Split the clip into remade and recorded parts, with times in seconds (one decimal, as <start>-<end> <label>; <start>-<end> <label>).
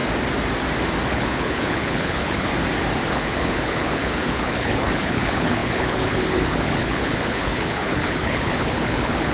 0.0-1.1 recorded; 1.1-2.5 remade; 2.5-3.1 recorded; 3.1-9.3 remade